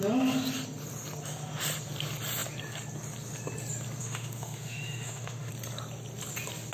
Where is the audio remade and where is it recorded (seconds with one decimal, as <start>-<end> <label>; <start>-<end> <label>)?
0.0-4.0 recorded; 4.0-5.5 remade; 5.5-6.7 recorded